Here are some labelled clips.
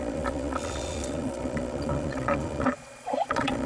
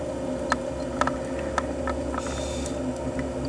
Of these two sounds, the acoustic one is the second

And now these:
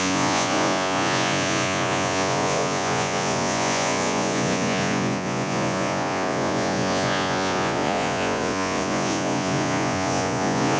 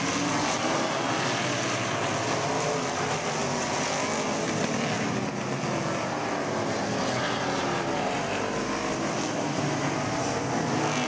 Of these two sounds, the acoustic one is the second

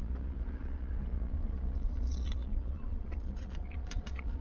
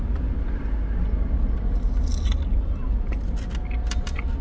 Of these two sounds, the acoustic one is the second